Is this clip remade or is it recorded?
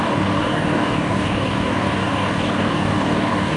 remade